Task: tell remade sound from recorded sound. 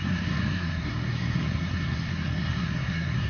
remade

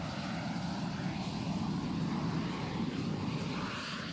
recorded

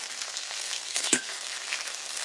remade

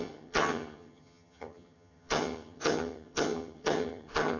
remade